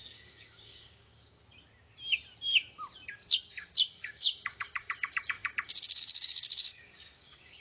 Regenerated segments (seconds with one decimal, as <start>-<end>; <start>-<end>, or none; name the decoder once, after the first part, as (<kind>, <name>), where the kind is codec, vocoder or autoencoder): 0.0-1.4 (codec, DAC); 3.9-7.6